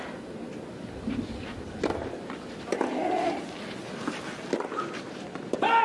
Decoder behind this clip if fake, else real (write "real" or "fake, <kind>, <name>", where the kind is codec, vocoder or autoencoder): real